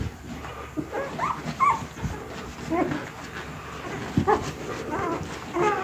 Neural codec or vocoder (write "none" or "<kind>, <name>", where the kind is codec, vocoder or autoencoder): none